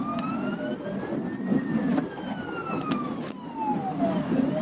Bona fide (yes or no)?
yes